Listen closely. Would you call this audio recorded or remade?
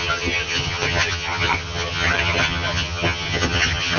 remade